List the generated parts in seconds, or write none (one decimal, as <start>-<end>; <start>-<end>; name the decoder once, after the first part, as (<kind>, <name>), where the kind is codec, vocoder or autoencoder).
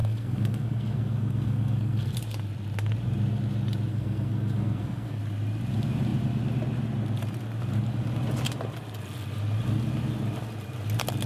0.0-2.1 (codec, SNAC); 3.9-5.2